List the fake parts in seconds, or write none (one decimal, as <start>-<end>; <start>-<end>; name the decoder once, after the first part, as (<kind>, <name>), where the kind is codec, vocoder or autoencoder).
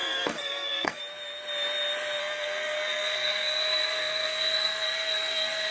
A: 0.0-1.0 (codec, SNAC); 2.2-5.7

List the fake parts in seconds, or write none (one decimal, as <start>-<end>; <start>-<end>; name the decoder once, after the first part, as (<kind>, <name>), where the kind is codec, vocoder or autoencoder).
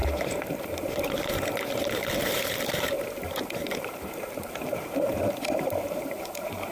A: 0.0-6.7 (vocoder, BigVGAN v2)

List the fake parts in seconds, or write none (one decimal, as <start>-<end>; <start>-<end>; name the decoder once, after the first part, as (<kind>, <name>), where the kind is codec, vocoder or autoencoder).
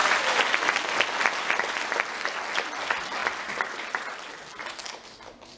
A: none